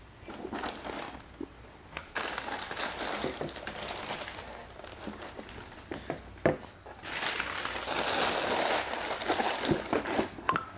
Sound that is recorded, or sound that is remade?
recorded